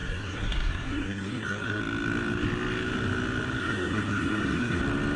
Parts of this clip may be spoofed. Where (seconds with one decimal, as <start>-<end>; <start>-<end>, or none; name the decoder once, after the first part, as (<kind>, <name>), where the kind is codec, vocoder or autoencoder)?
0.0-1.8 (codec, SNAC); 3.6-4.8